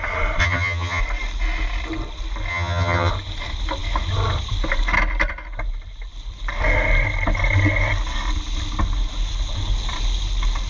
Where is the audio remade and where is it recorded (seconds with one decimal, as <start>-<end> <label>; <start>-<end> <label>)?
0.0-0.4 recorded; 0.4-1.0 remade; 1.0-2.5 recorded; 2.5-3.1 remade; 3.1-10.7 recorded